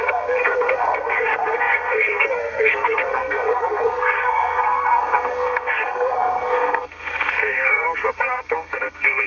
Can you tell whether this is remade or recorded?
remade